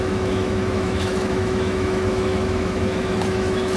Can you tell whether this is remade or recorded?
remade